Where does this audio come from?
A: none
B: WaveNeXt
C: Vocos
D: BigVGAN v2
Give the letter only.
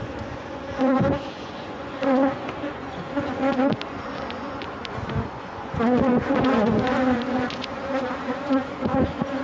C